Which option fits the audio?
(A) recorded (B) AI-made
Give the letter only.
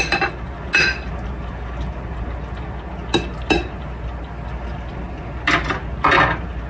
A